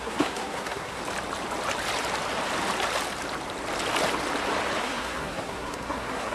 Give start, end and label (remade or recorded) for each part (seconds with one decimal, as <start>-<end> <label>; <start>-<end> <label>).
0.0-1.0 remade; 1.0-4.8 recorded; 4.8-6.3 remade

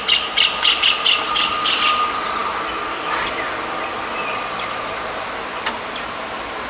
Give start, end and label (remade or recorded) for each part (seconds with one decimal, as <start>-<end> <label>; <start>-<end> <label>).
0.0-6.7 recorded

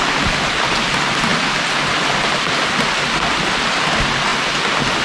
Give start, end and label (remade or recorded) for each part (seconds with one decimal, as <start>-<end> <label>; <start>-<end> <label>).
0.0-5.0 recorded

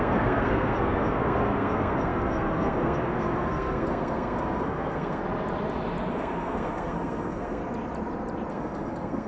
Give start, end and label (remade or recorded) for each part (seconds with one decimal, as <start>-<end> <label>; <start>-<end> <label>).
0.0-5.2 remade; 5.2-6.1 recorded; 6.1-7.6 remade; 7.6-8.5 recorded; 8.5-9.3 remade

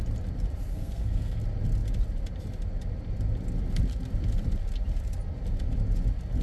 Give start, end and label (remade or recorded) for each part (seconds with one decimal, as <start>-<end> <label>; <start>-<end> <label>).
0.0-0.7 recorded; 0.7-1.4 remade; 1.4-6.4 recorded

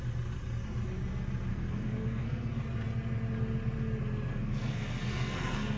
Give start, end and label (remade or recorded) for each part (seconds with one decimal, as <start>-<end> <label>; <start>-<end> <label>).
0.0-1.5 recorded; 1.5-2.6 remade; 2.6-4.3 recorded; 4.3-5.8 remade